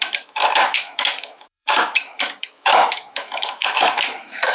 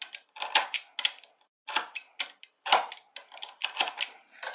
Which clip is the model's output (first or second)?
first